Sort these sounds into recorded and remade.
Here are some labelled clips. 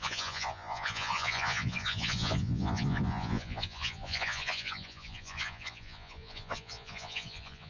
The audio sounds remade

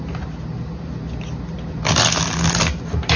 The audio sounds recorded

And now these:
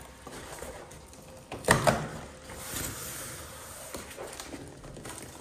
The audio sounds recorded